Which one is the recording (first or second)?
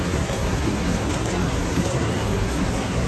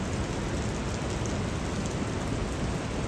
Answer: second